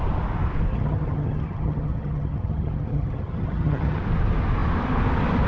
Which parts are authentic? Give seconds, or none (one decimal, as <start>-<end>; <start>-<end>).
0.0-0.7; 4.0-5.5